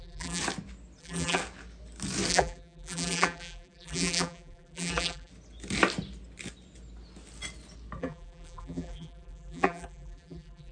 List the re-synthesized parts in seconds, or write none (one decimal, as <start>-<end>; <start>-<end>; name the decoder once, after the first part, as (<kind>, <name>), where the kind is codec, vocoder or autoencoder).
0.0-0.4 (vocoder, BigVGAN v2); 1.0-1.4; 2.3-5.3; 8.0-10.7